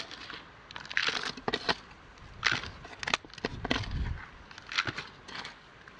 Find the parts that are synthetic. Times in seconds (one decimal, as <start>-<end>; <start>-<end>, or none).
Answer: none